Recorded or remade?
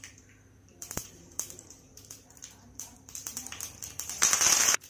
remade